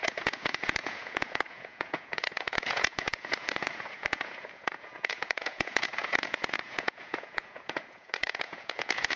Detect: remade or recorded remade